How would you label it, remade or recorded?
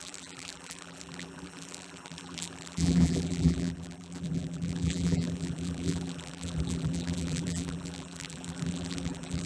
remade